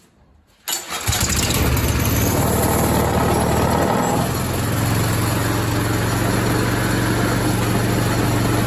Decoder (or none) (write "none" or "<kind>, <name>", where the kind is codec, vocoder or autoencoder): none